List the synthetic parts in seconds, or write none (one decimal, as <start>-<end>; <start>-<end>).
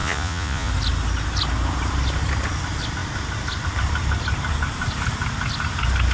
0.0-0.7